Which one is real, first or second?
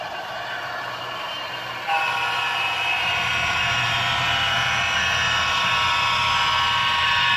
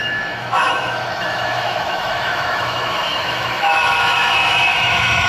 first